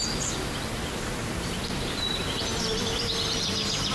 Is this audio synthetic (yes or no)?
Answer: no